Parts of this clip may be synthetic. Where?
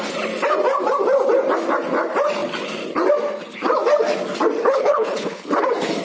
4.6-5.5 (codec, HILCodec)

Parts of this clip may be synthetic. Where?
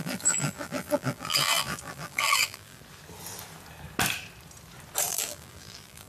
0.0-2.8 (vocoder, BigVGAN v2); 5.1-6.1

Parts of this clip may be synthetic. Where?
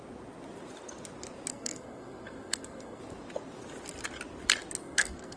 1.5-3.0 (codec, SNAC); 4.8-5.4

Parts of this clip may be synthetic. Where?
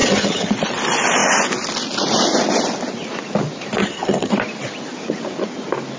0.0-0.5 (vocoder, HiFi-GAN); 3.8-4.3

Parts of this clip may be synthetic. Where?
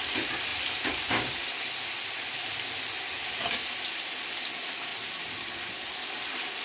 0.0-6.6 (vocoder, BigVGAN v2)